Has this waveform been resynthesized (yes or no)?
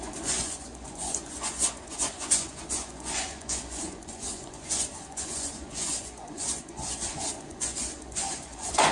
yes